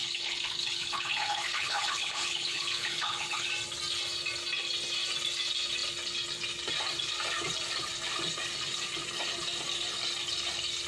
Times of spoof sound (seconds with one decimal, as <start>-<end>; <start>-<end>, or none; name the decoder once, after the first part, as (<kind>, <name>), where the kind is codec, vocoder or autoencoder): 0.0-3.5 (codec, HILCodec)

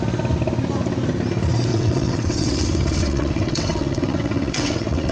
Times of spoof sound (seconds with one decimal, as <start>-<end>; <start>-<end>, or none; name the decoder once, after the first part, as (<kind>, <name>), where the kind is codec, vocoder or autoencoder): 1.7-5.1 (vocoder, WaveNeXt)

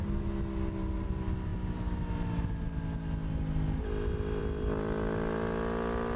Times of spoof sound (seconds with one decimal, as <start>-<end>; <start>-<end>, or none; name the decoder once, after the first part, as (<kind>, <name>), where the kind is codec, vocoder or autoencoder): none

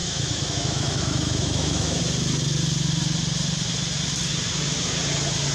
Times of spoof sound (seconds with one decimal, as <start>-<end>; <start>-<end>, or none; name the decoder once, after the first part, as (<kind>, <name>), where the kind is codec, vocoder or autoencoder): 0.0-2.0 (autoencoder, DAC-VAE)